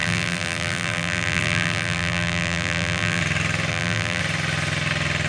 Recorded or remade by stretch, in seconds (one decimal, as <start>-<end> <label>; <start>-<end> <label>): 0.0-3.2 remade; 3.2-3.7 recorded; 3.7-4.2 remade; 4.2-5.3 recorded